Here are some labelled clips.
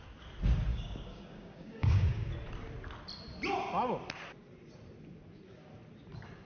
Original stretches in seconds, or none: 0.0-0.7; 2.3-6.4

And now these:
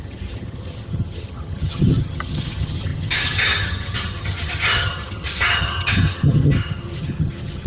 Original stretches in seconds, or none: none

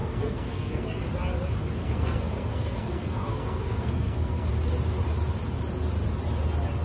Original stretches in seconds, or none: 1.0-1.8; 4.5-6.8

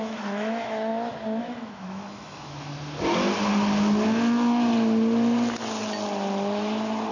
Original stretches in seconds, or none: 0.9-1.4; 2.7-7.1